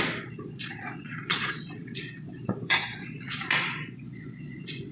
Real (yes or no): no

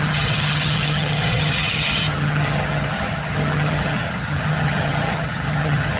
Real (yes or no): no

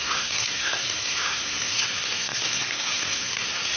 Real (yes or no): no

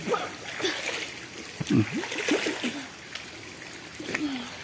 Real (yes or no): yes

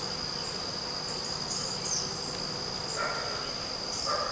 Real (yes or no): yes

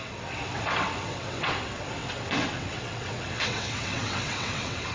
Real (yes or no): no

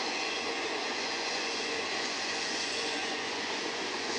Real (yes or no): no